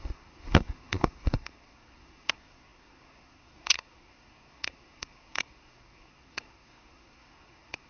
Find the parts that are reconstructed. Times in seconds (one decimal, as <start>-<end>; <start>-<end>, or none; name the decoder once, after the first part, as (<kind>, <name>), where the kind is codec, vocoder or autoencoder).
0.0-7.9 (codec, SNAC)